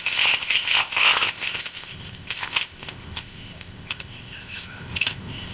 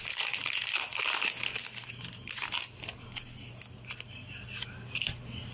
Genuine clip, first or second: second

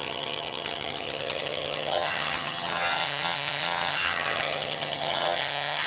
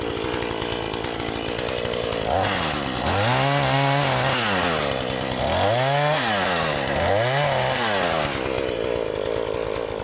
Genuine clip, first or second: second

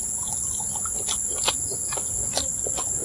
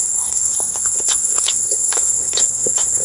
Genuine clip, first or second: first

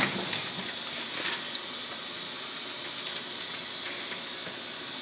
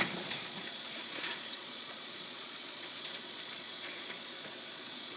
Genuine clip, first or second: first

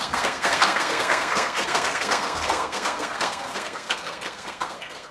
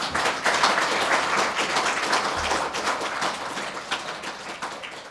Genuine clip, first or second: second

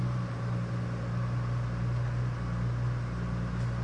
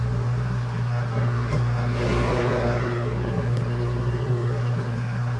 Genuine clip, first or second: first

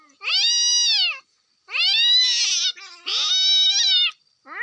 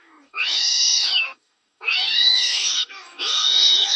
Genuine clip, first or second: first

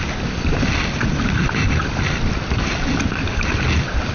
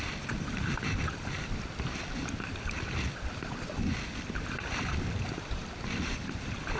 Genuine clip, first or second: first